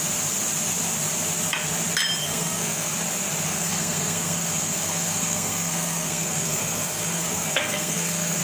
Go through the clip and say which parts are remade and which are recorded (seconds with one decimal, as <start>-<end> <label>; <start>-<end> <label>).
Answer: 0.0-2.2 recorded; 2.2-2.9 remade; 2.9-3.5 recorded; 3.5-8.4 remade